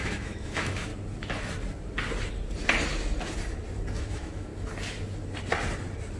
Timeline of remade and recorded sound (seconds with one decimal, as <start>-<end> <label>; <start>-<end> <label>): 0.0-0.9 remade; 0.9-4.0 recorded; 4.0-4.5 remade; 4.5-6.2 recorded